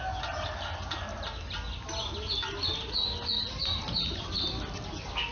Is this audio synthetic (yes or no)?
no